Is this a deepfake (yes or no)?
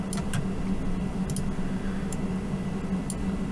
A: no